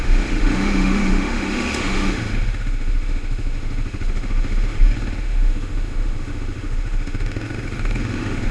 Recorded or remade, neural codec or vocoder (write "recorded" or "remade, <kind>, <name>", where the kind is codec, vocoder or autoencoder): remade, autoencoder, DAC-VAE